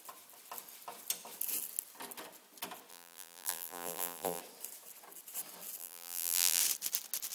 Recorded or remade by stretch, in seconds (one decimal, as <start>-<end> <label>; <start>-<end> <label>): 0.0-2.9 recorded; 2.9-4.4 remade; 4.4-5.8 recorded; 5.8-6.6 remade; 6.6-7.3 recorded